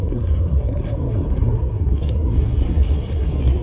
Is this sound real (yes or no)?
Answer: no